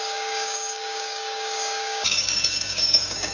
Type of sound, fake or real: fake